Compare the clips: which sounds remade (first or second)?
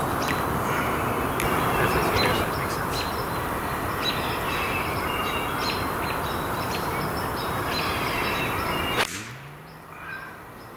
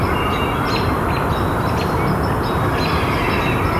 first